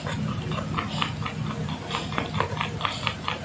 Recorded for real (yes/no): yes